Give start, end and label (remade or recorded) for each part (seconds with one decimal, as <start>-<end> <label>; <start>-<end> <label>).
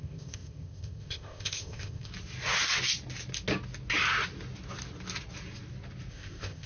0.0-2.1 remade; 2.1-6.1 recorded; 6.1-6.7 remade